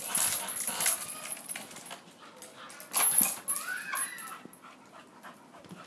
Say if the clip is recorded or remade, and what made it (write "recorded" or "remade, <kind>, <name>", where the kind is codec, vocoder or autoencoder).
recorded